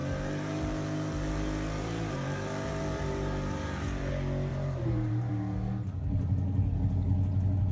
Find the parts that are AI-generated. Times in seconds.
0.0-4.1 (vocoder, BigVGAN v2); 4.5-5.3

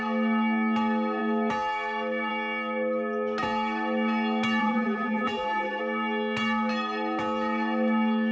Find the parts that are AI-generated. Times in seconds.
4.6-5.8 (vocoder, BigVGAN v2)

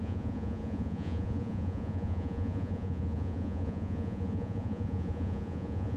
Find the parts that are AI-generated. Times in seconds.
0.0-6.0 (vocoder, Vocos)

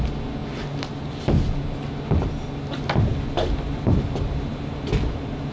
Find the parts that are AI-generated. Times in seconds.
none

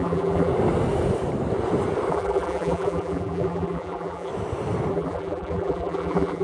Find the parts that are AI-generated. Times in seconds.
0.0-0.5 (vocoder, BigVGAN v2); 2.1-4.3; 4.9-6.4

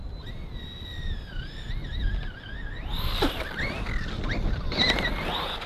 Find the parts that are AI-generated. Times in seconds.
none

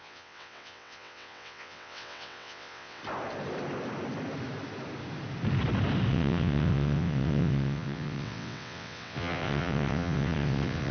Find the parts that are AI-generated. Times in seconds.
0.0-3.0 (vocoder, WaveNeXt); 6.1-10.9